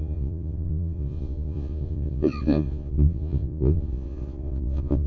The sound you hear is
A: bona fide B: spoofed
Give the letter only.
B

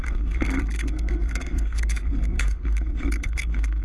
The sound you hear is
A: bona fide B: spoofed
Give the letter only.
B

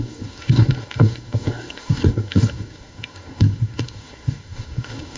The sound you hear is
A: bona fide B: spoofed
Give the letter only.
B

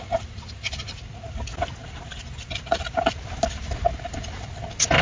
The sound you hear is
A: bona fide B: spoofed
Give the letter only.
A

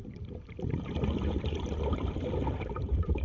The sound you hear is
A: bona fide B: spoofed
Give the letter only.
B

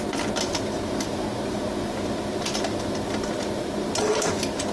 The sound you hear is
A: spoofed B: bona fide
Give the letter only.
B